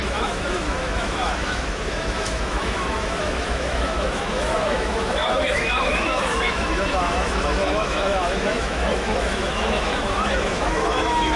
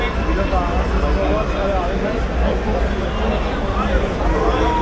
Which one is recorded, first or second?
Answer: second